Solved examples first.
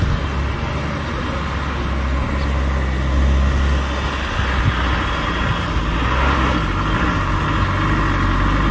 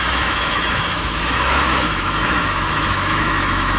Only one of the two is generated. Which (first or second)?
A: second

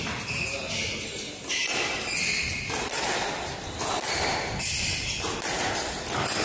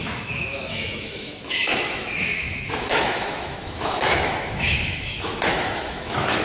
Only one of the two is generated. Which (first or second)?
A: second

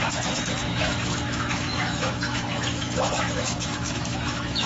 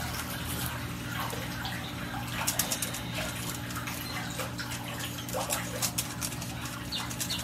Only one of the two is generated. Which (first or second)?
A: first